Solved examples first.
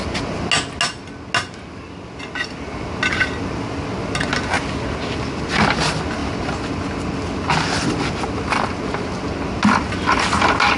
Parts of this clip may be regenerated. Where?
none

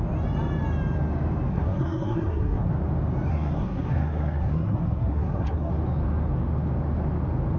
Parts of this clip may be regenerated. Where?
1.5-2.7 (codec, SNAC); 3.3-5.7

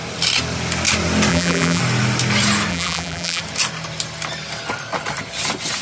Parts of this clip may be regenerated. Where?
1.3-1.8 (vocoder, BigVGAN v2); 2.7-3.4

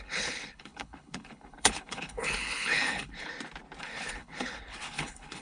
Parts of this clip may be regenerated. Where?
0.0-3.3 (codec, HILCodec); 3.8-5.4

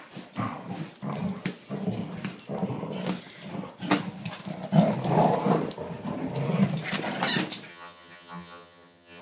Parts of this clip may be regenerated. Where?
7.7-9.2 (vocoder, HiFi-GAN)